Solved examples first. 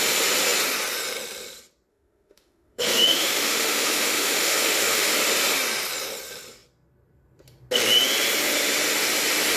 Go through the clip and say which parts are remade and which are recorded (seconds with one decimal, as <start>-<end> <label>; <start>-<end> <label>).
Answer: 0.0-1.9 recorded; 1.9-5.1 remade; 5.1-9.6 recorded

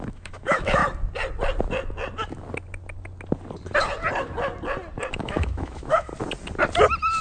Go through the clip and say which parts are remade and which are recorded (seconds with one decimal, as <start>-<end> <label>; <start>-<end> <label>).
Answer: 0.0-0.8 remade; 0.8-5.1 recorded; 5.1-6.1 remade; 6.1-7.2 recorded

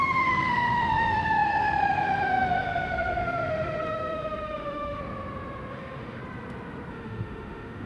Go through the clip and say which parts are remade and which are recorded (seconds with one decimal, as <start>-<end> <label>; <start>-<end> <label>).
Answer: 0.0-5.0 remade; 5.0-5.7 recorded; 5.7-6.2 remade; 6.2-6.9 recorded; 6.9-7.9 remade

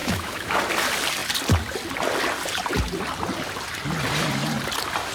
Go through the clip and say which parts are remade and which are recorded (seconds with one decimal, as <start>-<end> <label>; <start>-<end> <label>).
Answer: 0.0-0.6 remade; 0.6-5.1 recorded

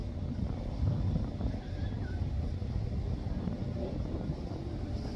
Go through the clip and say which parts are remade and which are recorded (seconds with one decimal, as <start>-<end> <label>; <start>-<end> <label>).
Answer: 0.0-5.2 recorded

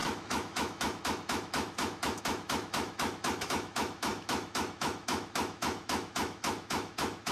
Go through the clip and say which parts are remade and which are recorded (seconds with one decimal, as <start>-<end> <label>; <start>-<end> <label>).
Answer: 0.0-7.3 remade

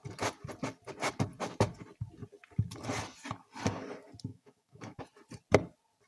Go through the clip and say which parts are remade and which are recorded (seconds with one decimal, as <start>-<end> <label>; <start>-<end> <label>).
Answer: 0.0-4.3 recorded; 4.3-5.0 remade; 5.0-6.1 recorded